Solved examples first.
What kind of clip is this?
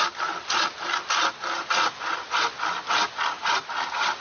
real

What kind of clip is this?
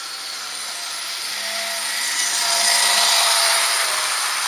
real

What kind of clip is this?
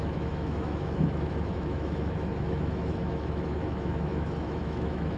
fake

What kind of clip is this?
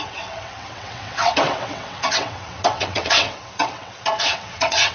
fake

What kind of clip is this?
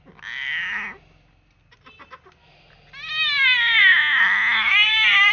real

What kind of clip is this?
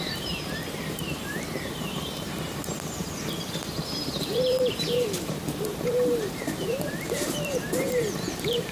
fake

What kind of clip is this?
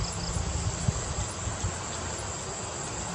real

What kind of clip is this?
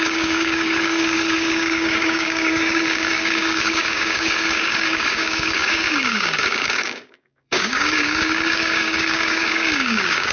fake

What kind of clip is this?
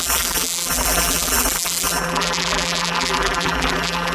fake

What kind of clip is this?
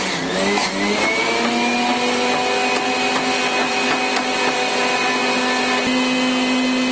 real